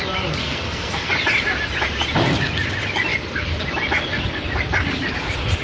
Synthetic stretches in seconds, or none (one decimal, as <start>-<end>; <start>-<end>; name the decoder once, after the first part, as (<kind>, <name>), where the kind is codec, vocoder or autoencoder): 0.4-1.1 (codec, SNAC)